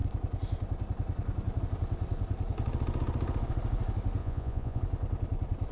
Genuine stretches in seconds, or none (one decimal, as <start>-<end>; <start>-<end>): 0.0-4.2; 4.8-5.7